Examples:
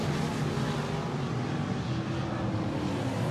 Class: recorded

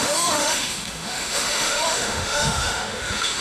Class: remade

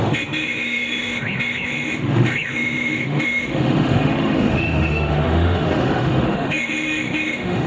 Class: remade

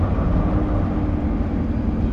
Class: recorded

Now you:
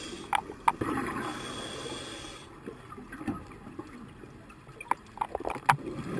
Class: recorded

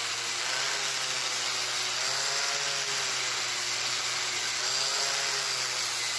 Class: recorded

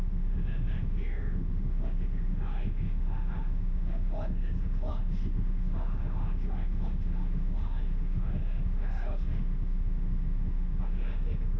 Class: remade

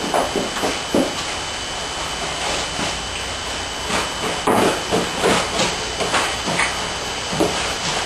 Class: recorded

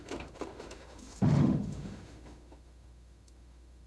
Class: remade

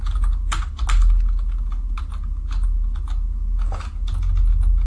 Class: recorded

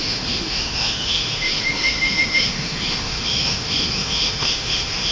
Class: remade